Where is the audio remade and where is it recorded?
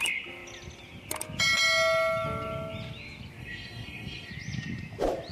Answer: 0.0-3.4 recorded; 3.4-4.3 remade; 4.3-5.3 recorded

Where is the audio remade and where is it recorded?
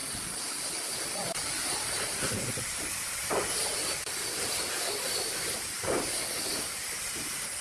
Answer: 0.0-5.8 recorded; 5.8-6.8 remade; 6.8-7.6 recorded